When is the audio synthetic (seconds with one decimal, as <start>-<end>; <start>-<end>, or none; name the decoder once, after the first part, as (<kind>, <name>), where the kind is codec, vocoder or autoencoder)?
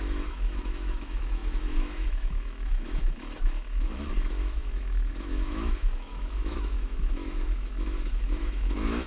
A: 0.0-9.1 (autoencoder, DAC-VAE)